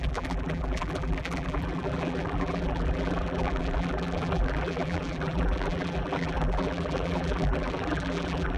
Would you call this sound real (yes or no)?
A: no